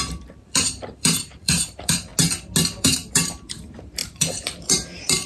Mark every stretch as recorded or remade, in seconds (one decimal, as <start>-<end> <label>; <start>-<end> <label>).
0.0-2.1 remade; 2.1-2.8 recorded; 2.8-5.3 remade